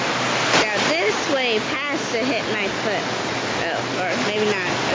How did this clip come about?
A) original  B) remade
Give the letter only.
A